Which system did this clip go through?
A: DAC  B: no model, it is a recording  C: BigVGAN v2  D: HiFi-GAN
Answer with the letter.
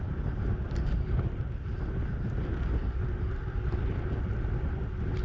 B